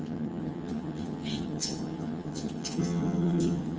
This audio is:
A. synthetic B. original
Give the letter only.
A